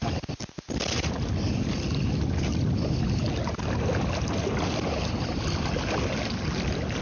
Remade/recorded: recorded